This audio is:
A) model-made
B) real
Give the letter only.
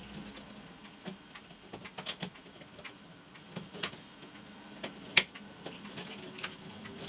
B